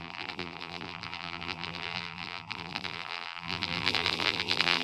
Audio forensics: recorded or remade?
remade